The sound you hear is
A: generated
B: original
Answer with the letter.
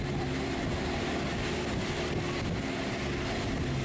B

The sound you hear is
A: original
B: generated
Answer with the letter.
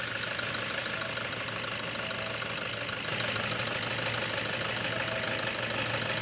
A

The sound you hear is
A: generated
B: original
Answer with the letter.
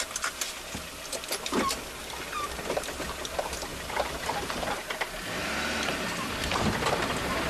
B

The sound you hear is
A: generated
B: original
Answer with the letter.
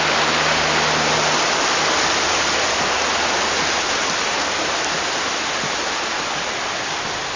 B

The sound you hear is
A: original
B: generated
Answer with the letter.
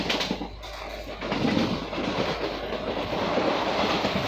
A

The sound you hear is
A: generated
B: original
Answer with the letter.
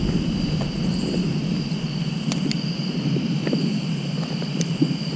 A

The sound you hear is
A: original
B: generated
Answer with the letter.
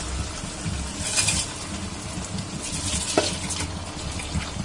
A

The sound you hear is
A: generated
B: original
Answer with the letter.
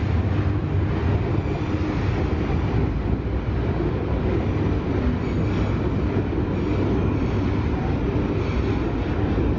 B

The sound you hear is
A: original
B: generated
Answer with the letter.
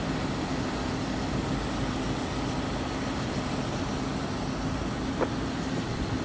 A